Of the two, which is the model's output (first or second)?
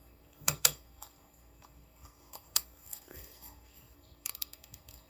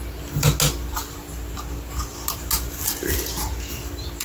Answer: first